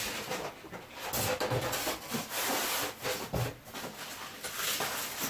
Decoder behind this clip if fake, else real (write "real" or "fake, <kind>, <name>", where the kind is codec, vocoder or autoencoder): real